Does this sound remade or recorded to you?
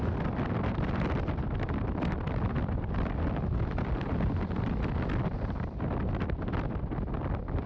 remade